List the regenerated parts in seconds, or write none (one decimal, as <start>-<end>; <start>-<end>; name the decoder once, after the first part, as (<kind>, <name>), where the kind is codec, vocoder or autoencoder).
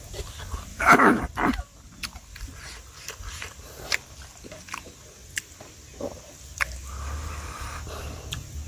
0.7-1.2 (autoencoder, DAC-VAE)